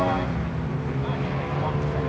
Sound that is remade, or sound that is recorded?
recorded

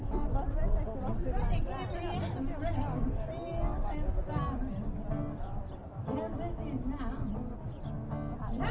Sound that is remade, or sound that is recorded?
recorded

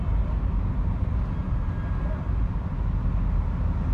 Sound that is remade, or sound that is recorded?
recorded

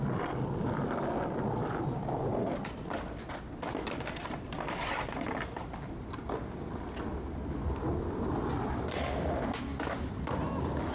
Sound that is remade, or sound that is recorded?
recorded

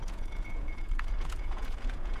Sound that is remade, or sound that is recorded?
remade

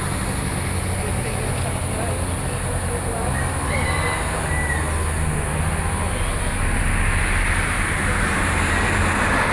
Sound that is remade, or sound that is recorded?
recorded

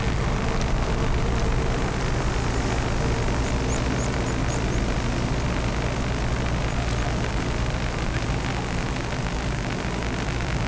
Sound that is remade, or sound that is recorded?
recorded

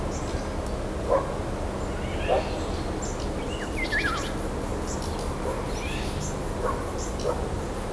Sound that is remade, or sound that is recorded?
recorded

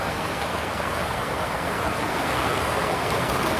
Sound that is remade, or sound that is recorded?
remade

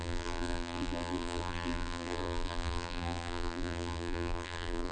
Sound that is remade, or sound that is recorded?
remade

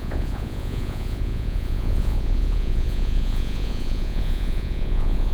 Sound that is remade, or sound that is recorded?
remade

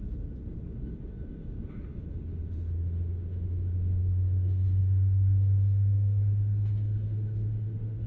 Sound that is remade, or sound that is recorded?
remade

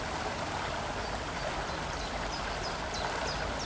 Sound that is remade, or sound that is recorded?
recorded